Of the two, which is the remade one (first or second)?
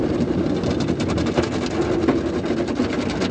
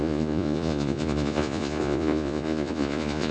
second